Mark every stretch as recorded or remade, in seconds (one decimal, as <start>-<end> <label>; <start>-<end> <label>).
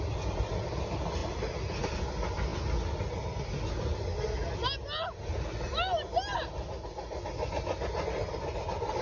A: 0.0-9.0 recorded